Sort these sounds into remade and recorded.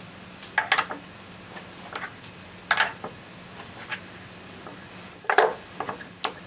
recorded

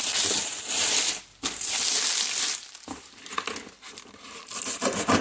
recorded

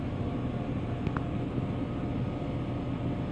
recorded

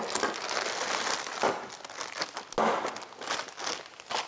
recorded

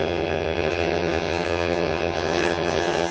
remade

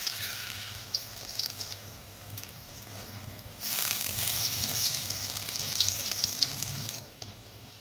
remade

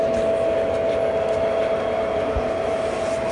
recorded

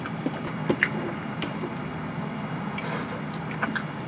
recorded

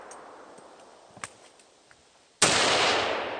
recorded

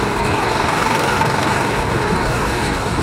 remade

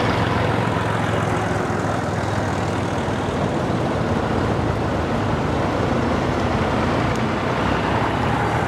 recorded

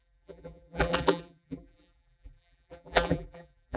remade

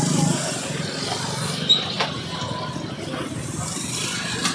recorded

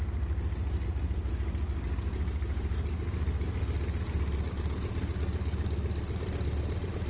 recorded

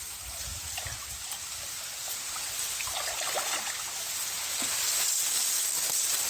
recorded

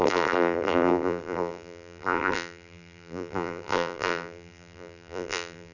remade